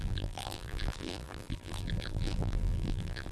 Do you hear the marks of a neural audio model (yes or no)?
yes